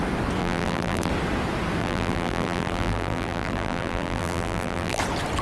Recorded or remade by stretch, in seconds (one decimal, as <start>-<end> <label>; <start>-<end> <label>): 0.0-0.4 recorded; 0.4-1.1 remade; 1.1-1.8 recorded; 1.8-5.0 remade; 5.0-5.4 recorded